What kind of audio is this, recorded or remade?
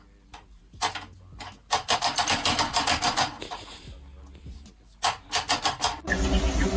recorded